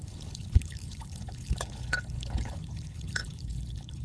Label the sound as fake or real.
fake